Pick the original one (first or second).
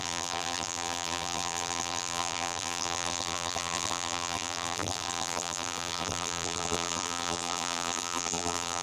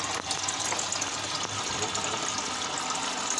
second